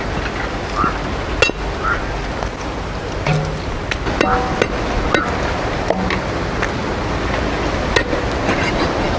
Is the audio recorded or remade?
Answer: recorded